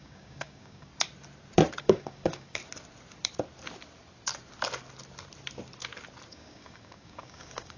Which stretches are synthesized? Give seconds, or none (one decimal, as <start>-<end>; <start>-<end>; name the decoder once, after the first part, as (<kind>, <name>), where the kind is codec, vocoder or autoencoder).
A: 0.0-0.9 (codec, DAC); 1.8-2.6; 6.3-7.8